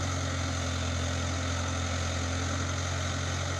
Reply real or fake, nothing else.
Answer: real